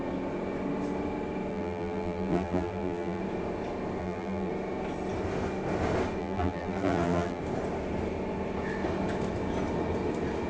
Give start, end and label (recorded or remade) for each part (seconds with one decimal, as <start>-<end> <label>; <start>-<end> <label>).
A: 0.0-1.5 recorded; 1.5-3.2 remade; 3.2-4.0 recorded; 4.0-4.5 remade; 4.5-6.2 recorded; 6.2-7.4 remade; 7.4-10.5 recorded